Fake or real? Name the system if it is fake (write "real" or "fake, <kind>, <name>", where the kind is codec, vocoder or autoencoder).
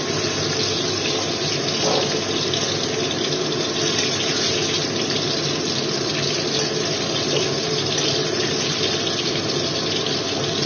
real